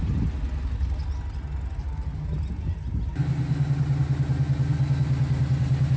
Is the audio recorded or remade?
recorded